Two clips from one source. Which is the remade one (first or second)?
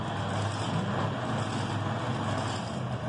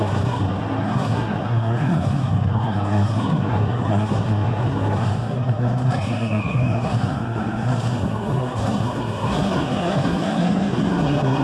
second